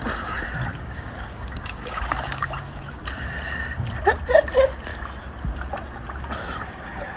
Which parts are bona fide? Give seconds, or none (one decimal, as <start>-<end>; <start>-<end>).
0.0-0.7; 3.0-7.2

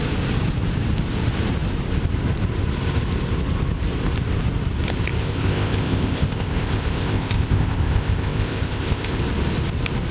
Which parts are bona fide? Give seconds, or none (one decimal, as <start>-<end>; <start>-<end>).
0.0-5.2; 9.2-10.1

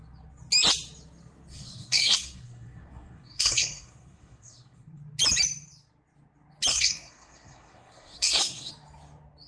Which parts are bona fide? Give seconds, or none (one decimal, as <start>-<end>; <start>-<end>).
0.0-1.5; 5.0-6.7; 8.7-9.5

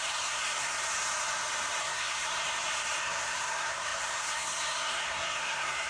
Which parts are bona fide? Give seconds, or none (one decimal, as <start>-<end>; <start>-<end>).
0.8-1.8; 2.3-3.0

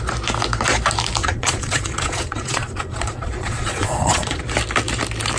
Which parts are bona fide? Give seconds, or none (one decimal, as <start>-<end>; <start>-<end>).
0.0-1.2; 4.4-5.4

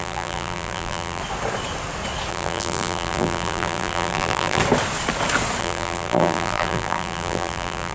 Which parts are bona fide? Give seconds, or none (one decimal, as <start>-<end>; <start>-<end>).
1.2-2.3; 4.6-5.6

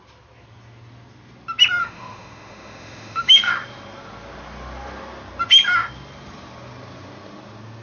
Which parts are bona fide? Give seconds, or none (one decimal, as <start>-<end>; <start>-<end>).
0.0-1.8; 3.5-7.8

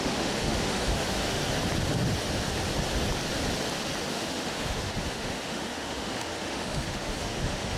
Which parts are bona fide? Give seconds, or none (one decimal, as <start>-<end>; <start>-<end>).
1.4-4.1